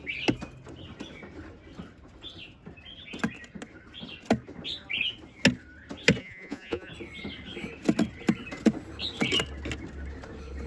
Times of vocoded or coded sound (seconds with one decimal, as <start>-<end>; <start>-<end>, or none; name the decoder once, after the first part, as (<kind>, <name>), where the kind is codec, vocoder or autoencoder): 6.2-6.9 (vocoder, Vocos)